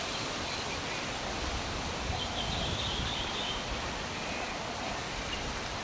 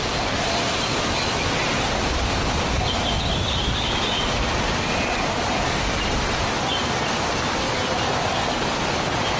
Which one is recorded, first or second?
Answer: second